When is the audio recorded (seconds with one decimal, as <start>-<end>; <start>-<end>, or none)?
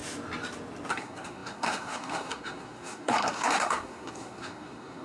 0.0-0.9